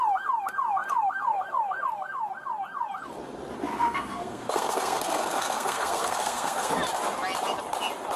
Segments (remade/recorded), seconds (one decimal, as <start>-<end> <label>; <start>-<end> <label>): 0.0-3.7 recorded; 3.7-6.7 remade; 6.7-8.2 recorded